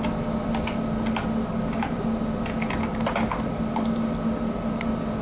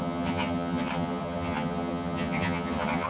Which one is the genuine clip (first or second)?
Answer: first